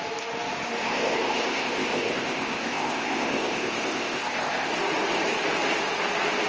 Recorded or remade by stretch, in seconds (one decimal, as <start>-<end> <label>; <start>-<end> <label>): 0.0-0.8 recorded; 0.8-4.7 remade; 4.7-6.5 recorded